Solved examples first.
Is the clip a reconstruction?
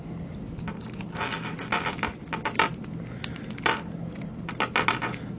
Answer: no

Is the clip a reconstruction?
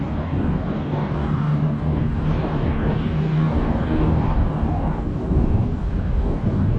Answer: yes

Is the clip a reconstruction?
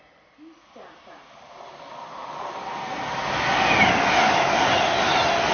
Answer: no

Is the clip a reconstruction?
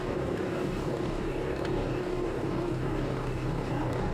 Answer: yes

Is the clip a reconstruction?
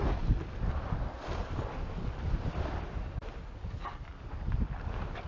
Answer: no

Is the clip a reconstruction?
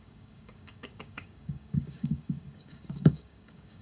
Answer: yes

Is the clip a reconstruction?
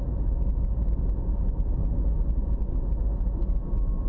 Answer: no